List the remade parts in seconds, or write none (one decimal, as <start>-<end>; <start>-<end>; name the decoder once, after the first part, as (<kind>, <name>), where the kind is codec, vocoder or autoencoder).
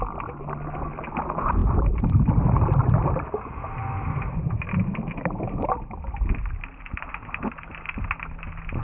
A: none